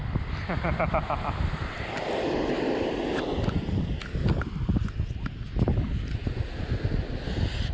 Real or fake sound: real